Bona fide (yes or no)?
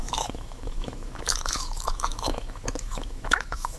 no